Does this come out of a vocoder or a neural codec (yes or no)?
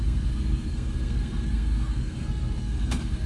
yes